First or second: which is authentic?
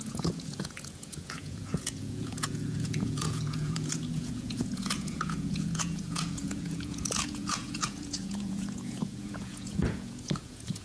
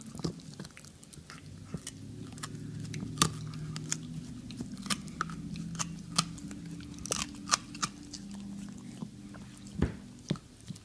second